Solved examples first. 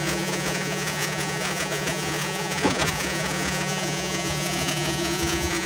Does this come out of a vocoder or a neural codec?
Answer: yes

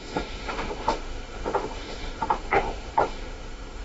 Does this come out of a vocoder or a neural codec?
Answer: yes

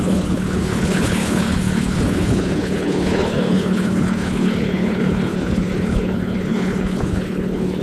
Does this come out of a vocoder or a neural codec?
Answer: yes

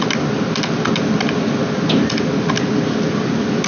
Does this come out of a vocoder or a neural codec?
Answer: no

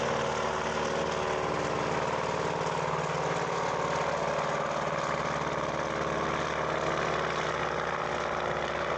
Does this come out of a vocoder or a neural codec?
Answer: no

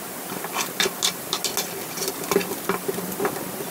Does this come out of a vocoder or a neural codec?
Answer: no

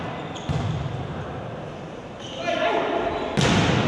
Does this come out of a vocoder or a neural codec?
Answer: no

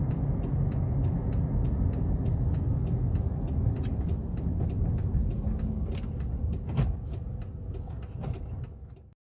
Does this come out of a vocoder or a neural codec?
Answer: no